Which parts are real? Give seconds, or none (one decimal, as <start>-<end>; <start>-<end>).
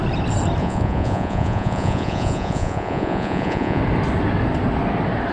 0.0-0.6; 3.8-5.3